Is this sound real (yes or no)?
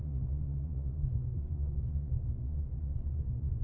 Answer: no